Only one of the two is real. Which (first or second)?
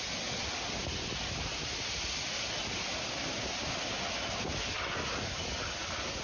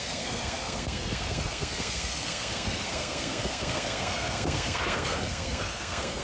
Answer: first